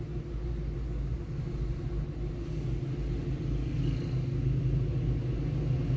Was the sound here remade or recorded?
recorded